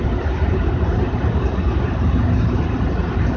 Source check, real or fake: real